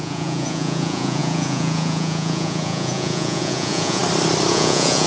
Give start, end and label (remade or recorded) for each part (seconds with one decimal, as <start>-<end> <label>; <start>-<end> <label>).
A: 0.0-4.0 remade; 4.0-4.5 recorded; 4.5-5.1 remade

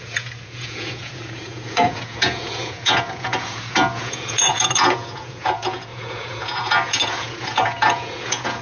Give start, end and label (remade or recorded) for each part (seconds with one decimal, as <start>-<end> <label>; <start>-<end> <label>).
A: 0.0-8.6 remade